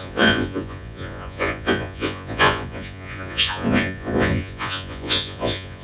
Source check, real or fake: fake